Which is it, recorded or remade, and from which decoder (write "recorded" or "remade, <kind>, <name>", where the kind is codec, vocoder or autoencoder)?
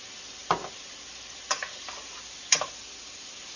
recorded